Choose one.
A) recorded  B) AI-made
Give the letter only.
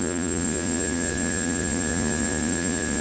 B